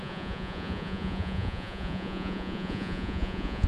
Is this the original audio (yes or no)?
no